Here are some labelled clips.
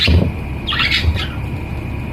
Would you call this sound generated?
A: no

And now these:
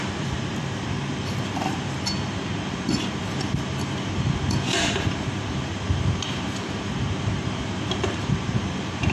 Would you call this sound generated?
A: yes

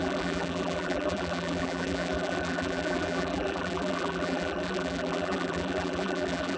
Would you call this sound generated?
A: yes